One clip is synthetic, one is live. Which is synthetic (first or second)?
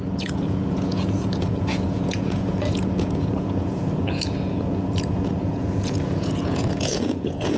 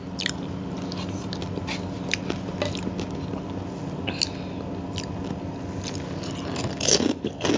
first